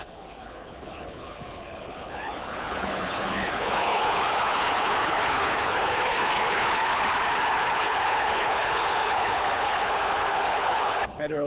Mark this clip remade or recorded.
remade